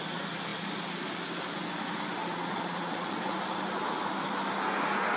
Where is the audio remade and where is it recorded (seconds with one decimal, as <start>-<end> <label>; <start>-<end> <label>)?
0.0-2.2 recorded; 2.2-3.2 remade; 3.2-5.2 recorded